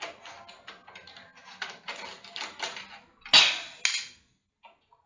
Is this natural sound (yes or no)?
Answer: yes